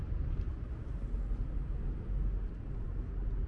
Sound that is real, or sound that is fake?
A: real